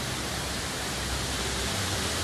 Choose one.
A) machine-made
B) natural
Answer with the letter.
A